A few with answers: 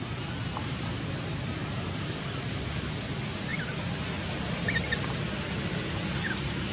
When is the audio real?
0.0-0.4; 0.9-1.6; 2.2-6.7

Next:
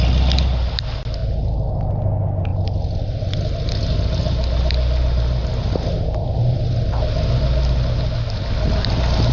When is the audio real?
0.0-9.3

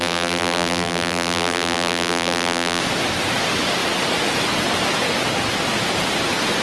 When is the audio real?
2.8-6.6

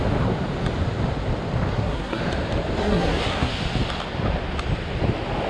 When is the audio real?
0.0-1.7; 2.2-2.8; 3.5-5.5

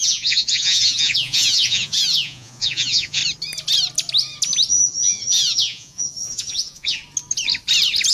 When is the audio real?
3.2-4.7; 7.0-8.1

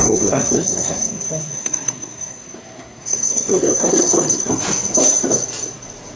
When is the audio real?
4.5-6.2